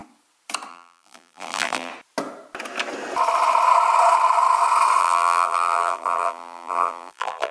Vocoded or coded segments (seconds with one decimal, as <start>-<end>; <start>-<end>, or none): 0.7-1.9; 5.0-7.5

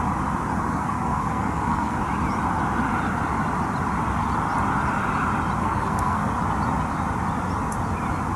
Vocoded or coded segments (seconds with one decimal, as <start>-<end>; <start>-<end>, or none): 0.7-2.0; 5.6-6.3

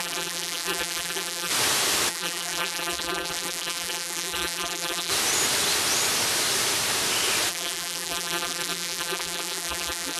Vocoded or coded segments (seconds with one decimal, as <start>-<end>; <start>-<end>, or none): 0.0-1.5; 2.1-5.1; 7.5-10.2

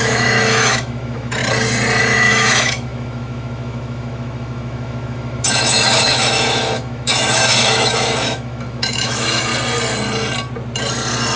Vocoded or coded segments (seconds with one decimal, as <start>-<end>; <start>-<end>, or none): 0.0-1.4; 2.0-9.5

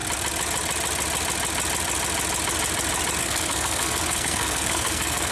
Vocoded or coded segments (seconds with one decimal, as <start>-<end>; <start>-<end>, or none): 3.2-5.3